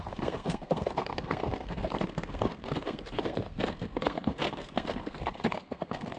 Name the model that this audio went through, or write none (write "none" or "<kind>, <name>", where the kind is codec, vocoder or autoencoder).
codec, SNAC